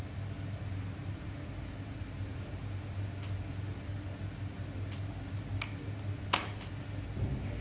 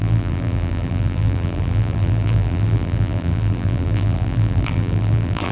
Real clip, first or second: first